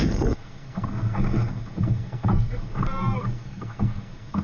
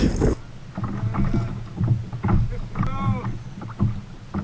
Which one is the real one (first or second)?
second